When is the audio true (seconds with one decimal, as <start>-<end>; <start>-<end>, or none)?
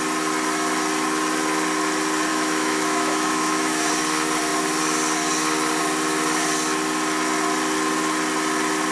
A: 0.0-2.3; 3.9-8.9